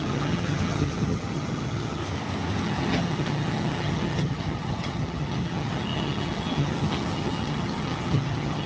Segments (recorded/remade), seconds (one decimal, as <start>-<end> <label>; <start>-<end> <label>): 0.0-2.0 remade; 2.0-2.6 recorded; 2.6-8.7 remade